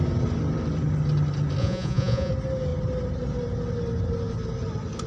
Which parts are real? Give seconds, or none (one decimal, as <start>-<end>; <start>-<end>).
0.0-1.6; 2.3-5.1